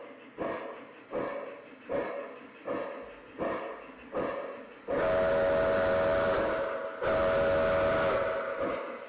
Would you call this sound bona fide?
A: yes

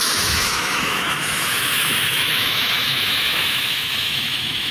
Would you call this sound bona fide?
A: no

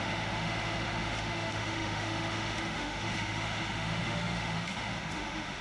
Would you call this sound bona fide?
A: no